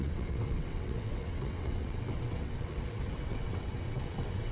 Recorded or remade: remade